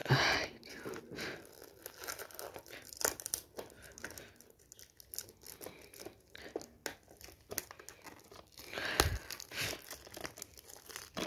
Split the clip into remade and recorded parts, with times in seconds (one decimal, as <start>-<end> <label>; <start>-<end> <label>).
0.0-11.3 recorded

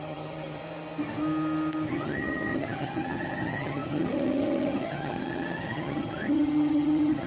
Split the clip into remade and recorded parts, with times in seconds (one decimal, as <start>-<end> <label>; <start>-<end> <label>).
0.0-0.6 remade; 0.6-1.9 recorded; 1.9-7.3 remade

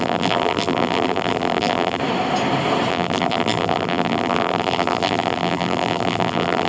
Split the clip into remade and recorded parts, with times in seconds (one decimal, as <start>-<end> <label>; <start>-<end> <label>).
0.0-2.0 remade; 2.0-2.9 recorded; 2.9-6.7 remade

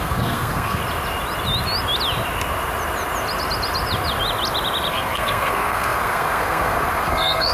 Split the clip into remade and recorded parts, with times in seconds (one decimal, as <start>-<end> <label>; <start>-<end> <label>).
0.0-0.8 remade; 0.8-4.9 recorded; 4.9-7.5 remade